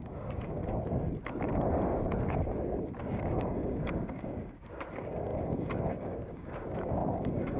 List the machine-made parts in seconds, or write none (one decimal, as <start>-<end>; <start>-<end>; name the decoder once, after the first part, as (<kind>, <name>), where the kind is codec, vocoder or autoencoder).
0.0-0.6 (codec, DAC); 3.0-7.6